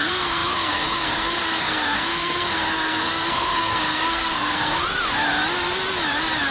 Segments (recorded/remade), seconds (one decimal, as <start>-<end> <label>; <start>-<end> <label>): 0.0-4.8 remade; 4.8-6.5 recorded